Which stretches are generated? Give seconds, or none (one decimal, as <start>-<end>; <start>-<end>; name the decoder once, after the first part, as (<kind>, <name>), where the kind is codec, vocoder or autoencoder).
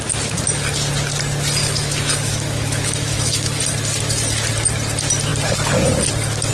1.6-3.6 (autoencoder, DAC-VAE)